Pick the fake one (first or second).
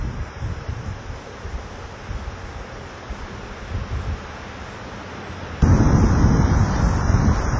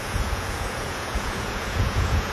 second